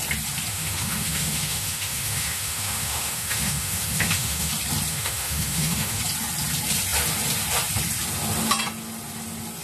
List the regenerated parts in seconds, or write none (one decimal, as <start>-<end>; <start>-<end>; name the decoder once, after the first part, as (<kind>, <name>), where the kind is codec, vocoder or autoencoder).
0.5-4.5 (autoencoder, DAC-VAE); 4.9-6.0